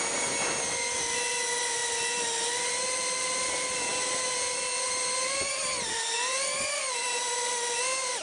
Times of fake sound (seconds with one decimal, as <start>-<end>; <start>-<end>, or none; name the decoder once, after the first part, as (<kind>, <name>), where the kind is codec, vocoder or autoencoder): none